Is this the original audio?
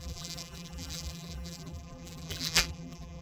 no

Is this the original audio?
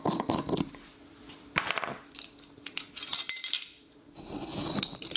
yes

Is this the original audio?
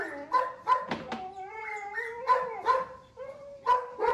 yes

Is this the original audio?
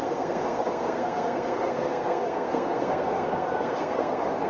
no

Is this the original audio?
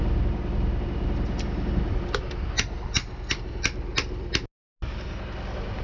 yes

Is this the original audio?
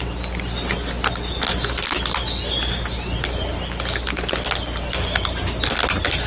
yes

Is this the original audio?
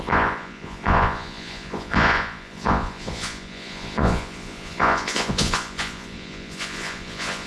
no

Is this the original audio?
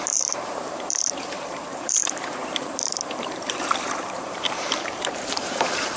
no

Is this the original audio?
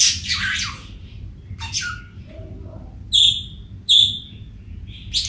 yes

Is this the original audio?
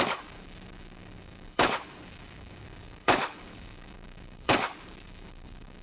no